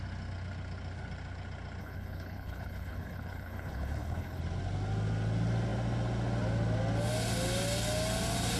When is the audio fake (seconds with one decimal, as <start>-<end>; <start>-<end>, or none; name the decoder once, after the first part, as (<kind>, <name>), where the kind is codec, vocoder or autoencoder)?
1.8-4.4 (codec, HILCodec)